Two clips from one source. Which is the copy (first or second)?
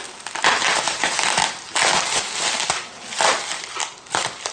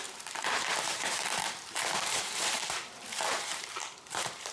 second